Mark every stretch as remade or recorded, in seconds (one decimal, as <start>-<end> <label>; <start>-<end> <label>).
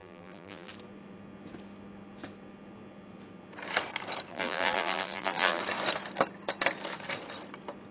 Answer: 0.0-0.7 remade; 0.7-4.3 recorded; 4.3-5.6 remade; 5.6-7.9 recorded